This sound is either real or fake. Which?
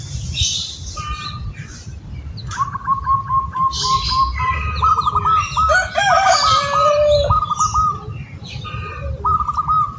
real